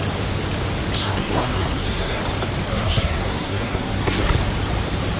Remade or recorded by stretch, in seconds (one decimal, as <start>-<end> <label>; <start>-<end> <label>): 0.0-1.0 recorded; 1.0-2.2 remade; 2.2-2.7 recorded; 2.7-4.2 remade; 4.2-5.2 recorded